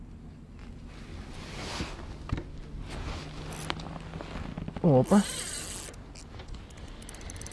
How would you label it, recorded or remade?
recorded